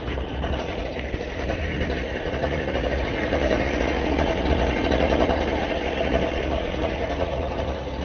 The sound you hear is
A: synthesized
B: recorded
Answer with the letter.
A